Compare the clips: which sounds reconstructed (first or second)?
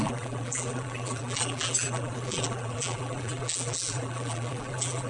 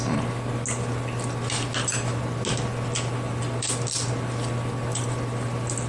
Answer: first